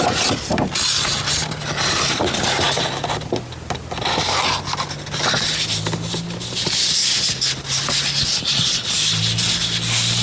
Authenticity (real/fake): real